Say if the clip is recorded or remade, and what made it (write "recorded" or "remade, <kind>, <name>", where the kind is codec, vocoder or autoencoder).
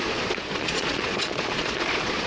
remade, vocoder, Vocos